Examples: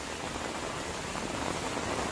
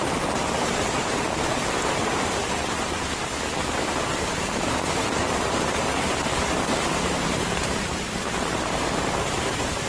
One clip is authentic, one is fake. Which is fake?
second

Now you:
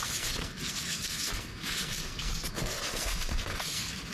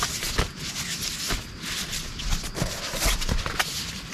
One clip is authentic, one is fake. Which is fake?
first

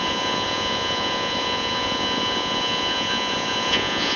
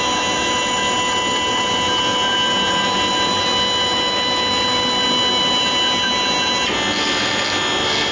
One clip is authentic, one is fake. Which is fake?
first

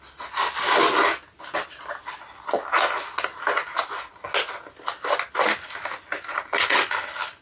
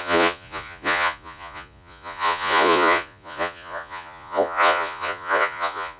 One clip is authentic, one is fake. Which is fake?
second